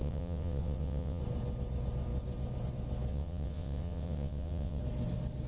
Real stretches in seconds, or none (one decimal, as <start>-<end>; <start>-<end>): 1.2-3.1; 4.8-5.5